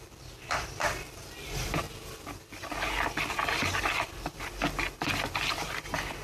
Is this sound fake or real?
fake